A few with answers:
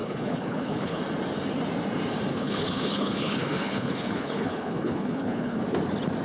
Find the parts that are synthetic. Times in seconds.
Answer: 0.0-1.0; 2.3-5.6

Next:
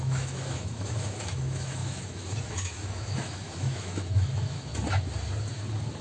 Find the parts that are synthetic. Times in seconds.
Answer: 0.0-4.7

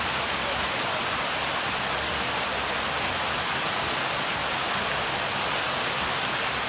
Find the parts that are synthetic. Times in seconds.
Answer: none

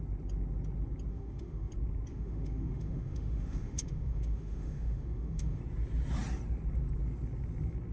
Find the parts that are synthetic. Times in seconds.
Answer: 1.1-1.7; 2.1-5.6